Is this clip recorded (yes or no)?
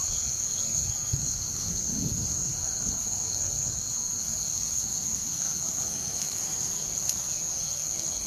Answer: no